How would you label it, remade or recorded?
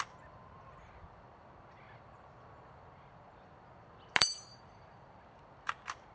remade